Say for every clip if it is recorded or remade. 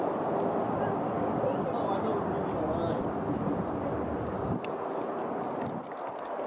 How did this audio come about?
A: recorded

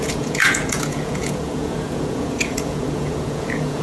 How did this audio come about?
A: remade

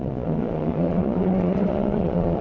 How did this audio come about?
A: remade